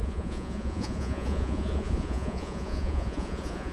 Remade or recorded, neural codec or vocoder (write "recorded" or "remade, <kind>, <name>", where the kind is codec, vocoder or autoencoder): remade, vocoder, Vocos